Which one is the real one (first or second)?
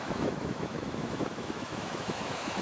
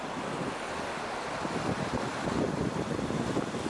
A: second